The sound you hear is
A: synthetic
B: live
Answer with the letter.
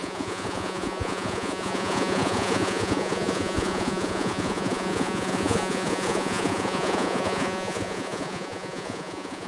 A